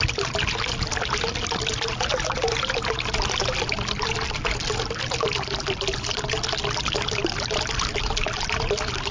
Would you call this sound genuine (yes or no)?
yes